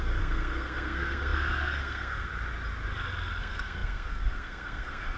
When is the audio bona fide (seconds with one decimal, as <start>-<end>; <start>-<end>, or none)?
2.3-3.4